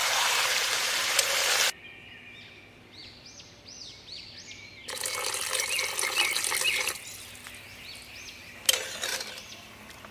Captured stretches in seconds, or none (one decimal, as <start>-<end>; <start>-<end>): 1.0-9.1; 9.7-10.1